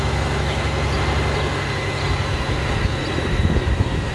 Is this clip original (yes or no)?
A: yes